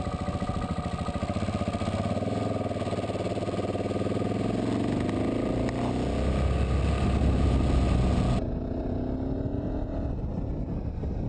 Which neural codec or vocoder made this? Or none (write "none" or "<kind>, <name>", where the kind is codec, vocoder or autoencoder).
none